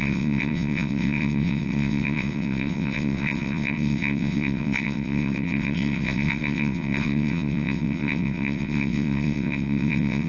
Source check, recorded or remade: remade